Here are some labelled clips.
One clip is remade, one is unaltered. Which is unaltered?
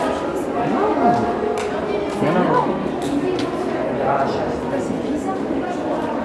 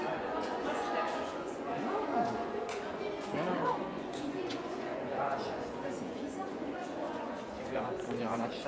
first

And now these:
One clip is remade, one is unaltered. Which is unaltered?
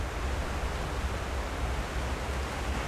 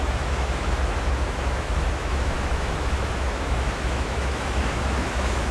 first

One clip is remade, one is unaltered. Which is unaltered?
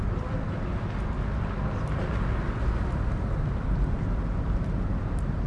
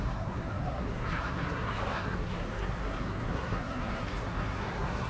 first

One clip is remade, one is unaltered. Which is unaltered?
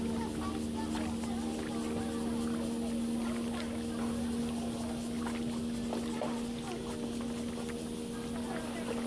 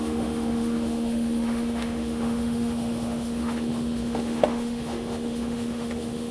first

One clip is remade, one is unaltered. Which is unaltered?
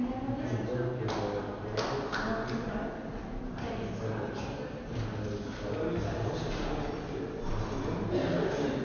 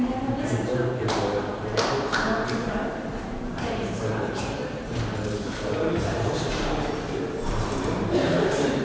first